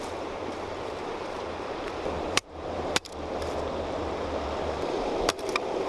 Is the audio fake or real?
fake